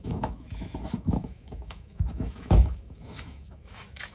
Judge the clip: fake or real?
fake